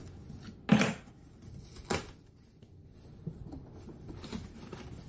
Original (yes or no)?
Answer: yes